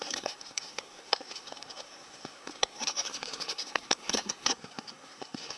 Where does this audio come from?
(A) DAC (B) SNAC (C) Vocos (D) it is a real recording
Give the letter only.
B